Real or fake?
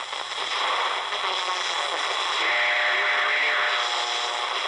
real